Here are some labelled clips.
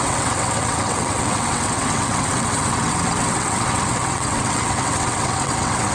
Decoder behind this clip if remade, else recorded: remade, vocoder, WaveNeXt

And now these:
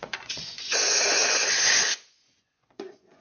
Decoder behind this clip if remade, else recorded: remade, vocoder, Vocos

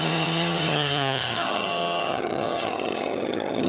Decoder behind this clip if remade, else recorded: remade, vocoder, HiFi-GAN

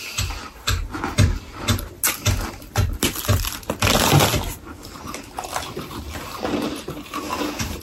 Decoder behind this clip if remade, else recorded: recorded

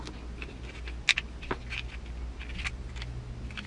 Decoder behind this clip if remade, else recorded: recorded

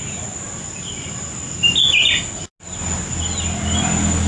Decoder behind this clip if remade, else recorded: recorded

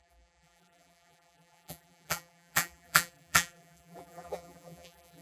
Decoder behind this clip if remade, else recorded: remade, vocoder, BigVGAN v2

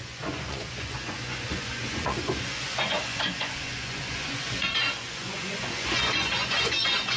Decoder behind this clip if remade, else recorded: remade, vocoder, Vocos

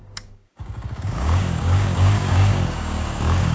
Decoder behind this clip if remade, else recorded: remade, codec, DAC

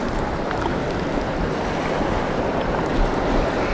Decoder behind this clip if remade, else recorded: recorded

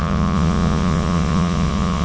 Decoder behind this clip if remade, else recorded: remade, vocoder, Vocos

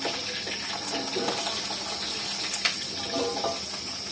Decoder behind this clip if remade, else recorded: recorded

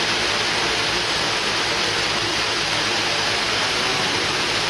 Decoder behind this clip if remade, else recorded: recorded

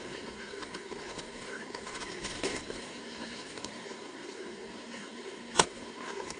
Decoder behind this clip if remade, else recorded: remade, codec, SNAC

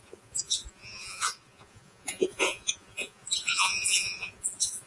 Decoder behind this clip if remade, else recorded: remade, vocoder, Vocos